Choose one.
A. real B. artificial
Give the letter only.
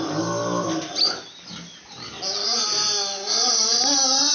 A